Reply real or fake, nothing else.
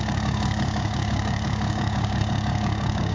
fake